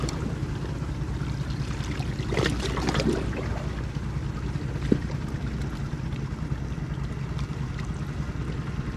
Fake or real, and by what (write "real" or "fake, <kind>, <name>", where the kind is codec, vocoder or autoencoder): real